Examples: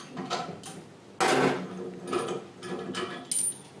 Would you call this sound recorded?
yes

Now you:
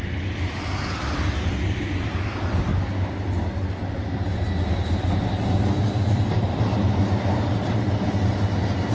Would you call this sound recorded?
yes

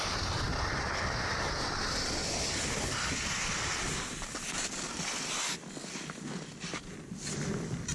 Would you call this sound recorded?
yes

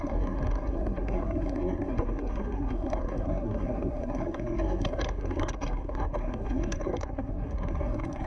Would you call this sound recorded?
no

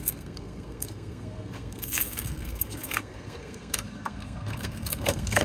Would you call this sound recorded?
no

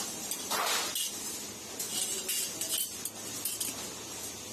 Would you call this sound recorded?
yes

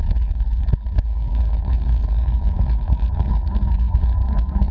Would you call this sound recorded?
no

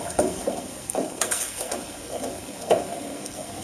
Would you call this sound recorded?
no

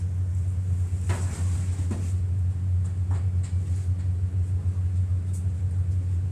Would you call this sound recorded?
yes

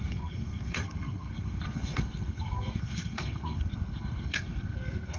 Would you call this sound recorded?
no